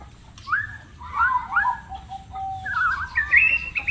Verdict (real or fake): real